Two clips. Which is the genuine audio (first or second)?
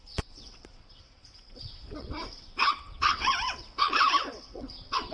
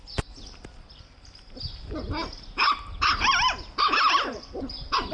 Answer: second